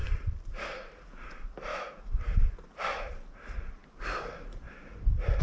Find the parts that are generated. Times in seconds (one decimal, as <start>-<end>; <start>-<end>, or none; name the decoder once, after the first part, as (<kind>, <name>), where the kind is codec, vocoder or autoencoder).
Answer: 1.7-2.2 (autoencoder, DAC-VAE)